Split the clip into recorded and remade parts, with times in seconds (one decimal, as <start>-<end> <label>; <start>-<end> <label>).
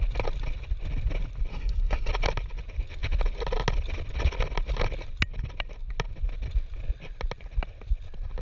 0.0-1.5 recorded; 1.5-2.1 remade; 2.1-8.4 recorded